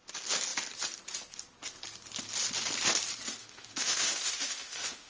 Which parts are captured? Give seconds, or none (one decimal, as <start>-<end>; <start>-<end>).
0.0-3.4